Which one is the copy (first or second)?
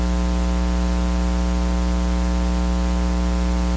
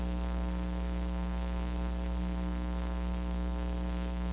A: second